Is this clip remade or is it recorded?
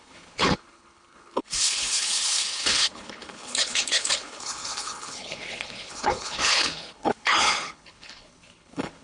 remade